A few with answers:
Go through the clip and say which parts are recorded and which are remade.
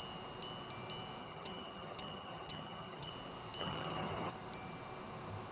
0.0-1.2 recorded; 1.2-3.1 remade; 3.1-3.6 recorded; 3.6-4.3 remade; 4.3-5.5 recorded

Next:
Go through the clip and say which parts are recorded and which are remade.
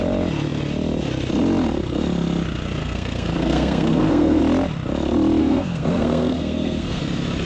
0.0-2.8 recorded; 2.8-4.4 remade; 4.4-5.4 recorded; 5.4-7.0 remade; 7.0-7.5 recorded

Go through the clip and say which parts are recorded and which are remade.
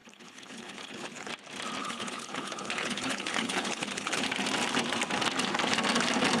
0.0-1.3 remade; 1.3-1.8 recorded; 1.8-4.2 remade; 4.2-6.4 recorded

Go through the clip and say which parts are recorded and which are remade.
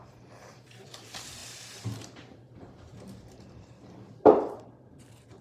0.0-5.4 remade